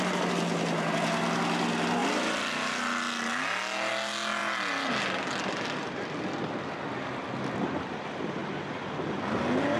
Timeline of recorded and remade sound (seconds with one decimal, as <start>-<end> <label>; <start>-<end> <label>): 0.0-9.8 recorded

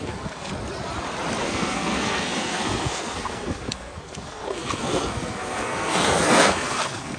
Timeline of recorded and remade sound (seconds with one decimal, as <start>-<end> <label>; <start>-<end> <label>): 0.0-0.5 remade; 0.5-1.4 recorded; 1.4-7.2 remade